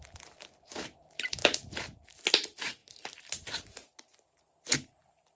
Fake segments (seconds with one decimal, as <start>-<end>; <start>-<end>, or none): none